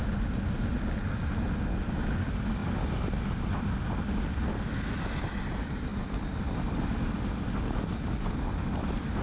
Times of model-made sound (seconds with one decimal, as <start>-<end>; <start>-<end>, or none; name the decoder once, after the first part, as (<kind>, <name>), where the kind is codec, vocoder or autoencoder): 5.9-7.8 (vocoder, BigVGAN v2)